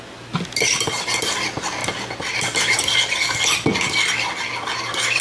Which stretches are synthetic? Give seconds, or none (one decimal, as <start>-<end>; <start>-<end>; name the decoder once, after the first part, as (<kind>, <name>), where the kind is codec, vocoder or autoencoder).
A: none